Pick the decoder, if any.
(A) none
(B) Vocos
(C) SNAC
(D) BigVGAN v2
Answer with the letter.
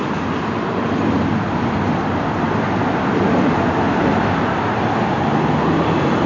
A